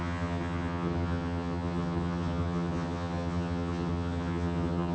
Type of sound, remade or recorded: remade